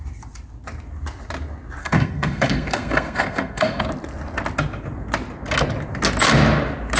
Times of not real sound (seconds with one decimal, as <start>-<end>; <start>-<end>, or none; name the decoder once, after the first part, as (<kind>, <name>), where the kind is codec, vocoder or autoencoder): 1.8-3.8 (codec, SNAC)